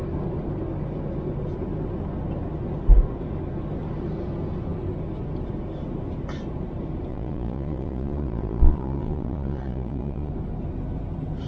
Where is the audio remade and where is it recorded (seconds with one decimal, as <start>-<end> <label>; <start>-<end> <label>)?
0.0-7.1 recorded; 7.1-10.3 remade; 10.3-11.5 recorded